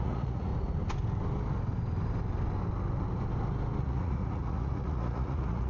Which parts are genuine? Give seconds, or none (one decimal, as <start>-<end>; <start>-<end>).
0.5-3.8